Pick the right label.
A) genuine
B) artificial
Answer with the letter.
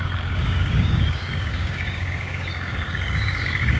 B